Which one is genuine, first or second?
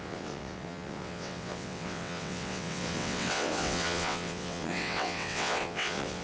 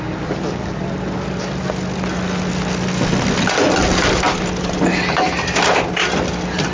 second